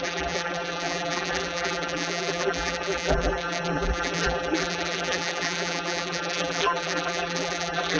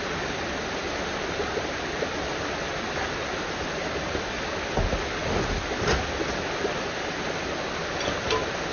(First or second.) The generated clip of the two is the first